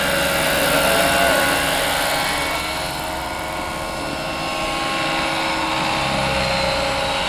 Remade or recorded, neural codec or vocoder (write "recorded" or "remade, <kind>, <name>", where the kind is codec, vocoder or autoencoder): recorded